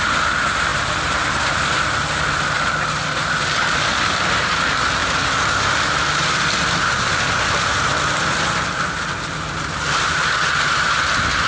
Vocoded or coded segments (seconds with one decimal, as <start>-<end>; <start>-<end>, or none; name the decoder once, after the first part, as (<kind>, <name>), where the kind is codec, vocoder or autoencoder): none